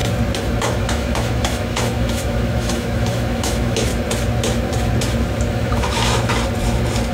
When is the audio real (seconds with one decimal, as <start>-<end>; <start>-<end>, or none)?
0.0-0.6; 3.9-5.5; 6.3-7.1